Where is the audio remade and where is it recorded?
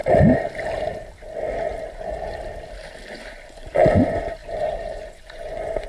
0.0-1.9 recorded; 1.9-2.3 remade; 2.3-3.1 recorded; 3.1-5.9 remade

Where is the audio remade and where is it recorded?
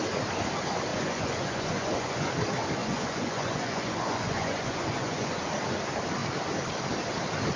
0.0-0.9 recorded; 0.9-2.3 remade; 2.3-2.8 recorded; 2.8-5.4 remade; 5.4-7.6 recorded